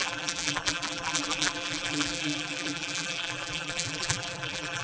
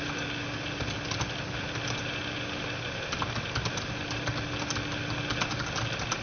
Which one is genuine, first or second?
second